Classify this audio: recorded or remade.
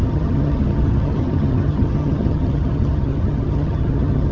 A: remade